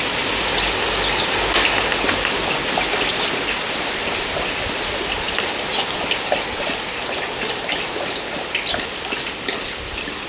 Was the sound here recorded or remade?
recorded